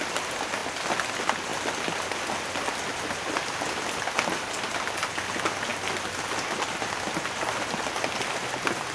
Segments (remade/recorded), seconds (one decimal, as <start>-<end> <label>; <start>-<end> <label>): 0.0-8.9 recorded